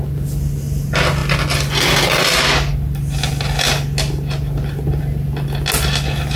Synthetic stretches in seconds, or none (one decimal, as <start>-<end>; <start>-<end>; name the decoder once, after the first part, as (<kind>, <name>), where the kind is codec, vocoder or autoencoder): none